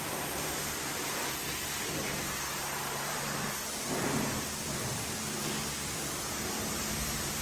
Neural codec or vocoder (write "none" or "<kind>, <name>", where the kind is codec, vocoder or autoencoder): vocoder, BigVGAN v2